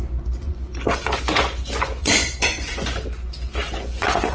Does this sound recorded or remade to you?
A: remade